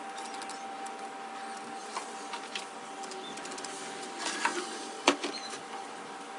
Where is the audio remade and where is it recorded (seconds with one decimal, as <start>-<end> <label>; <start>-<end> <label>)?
0.0-6.4 recorded